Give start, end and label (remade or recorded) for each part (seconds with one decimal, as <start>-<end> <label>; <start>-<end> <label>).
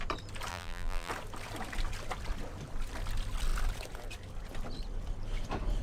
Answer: 0.0-0.5 recorded; 0.5-1.1 remade; 1.1-5.8 recorded